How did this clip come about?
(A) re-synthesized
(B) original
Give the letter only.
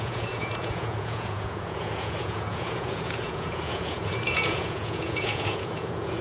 A